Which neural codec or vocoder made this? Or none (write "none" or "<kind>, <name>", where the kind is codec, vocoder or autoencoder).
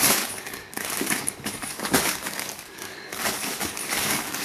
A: codec, DAC